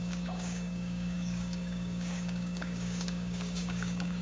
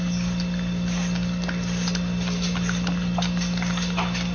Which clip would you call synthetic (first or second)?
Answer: first